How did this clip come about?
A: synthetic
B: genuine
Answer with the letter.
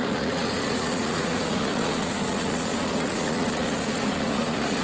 A